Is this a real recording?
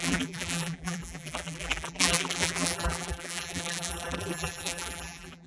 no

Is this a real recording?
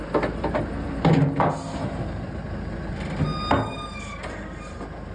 yes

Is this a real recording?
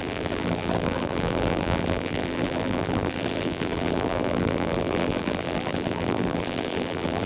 no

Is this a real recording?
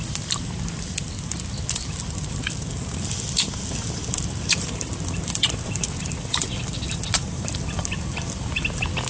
no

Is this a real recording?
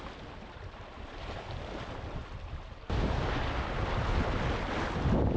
yes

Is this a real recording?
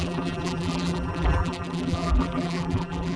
no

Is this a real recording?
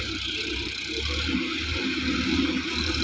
no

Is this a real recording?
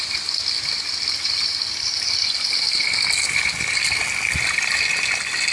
yes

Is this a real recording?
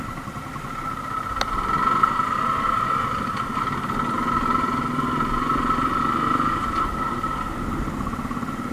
yes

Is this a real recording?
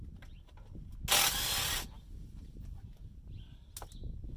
yes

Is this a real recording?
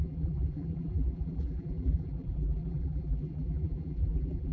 no